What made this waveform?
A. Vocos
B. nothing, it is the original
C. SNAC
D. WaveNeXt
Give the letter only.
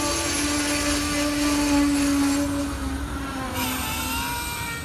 B